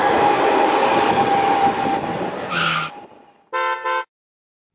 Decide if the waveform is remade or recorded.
recorded